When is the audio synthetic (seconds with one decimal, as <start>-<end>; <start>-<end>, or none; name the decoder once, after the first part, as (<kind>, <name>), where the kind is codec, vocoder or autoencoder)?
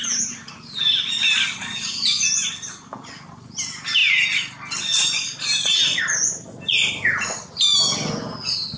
none